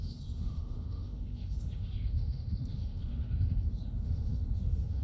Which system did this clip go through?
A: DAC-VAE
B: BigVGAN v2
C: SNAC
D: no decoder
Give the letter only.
A